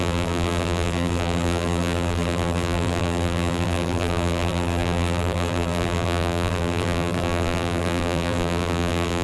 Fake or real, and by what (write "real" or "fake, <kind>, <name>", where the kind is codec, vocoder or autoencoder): fake, vocoder, BigVGAN v2